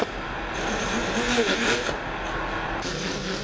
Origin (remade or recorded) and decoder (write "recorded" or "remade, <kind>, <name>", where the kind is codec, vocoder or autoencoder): recorded